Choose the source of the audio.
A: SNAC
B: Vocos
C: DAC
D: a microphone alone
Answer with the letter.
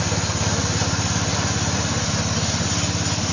D